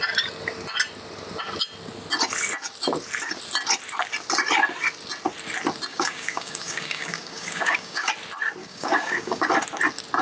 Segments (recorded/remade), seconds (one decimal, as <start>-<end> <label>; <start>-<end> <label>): 0.0-5.9 recorded; 5.9-8.1 remade; 8.1-8.6 recorded; 8.6-9.5 remade; 9.5-10.2 recorded